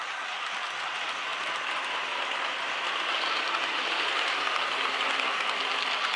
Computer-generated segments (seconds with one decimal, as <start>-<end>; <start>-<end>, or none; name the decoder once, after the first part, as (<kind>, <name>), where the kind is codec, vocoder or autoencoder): none